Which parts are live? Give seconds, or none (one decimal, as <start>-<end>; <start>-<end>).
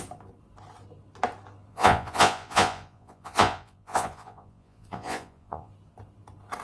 0.0-1.7; 5.7-6.6